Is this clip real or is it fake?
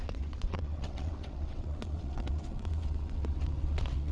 fake